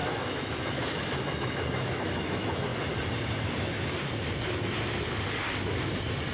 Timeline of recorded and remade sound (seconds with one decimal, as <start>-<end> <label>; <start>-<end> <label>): 0.0-2.7 remade; 2.7-6.3 recorded